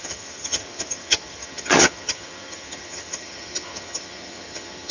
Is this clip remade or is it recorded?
remade